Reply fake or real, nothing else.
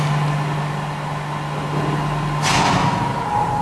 real